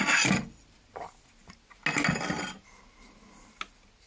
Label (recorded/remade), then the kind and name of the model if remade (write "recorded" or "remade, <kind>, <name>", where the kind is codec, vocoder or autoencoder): recorded